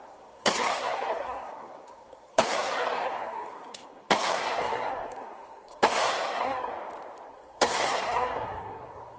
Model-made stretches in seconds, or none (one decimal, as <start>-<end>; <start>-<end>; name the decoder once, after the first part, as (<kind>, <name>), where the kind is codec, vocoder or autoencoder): 0.0-6.7 (codec, SNAC); 7.3-9.2